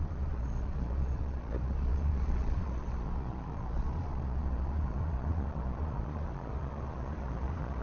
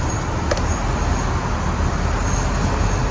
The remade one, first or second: first